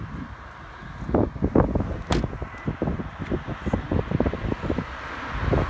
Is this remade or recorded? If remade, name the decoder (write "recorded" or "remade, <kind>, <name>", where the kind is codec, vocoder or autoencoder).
recorded